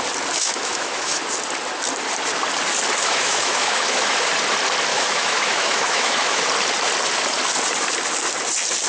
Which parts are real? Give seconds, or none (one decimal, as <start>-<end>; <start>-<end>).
0.0-0.4; 1.2-3.0; 4.3-4.9; 6.4-8.9